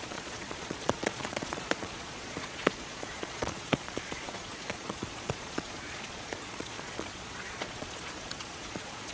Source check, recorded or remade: remade